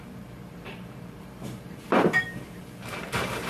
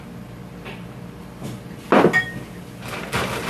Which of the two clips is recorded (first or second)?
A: second